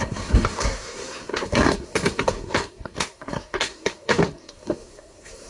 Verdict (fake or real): fake